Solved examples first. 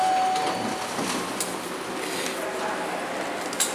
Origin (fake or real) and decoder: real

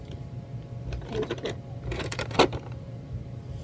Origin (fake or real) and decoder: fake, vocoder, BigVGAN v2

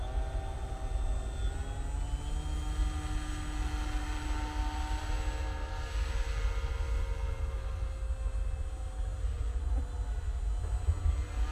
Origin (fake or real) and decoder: real